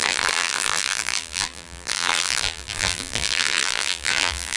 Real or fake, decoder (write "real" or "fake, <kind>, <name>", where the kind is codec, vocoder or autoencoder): fake, vocoder, BigVGAN v2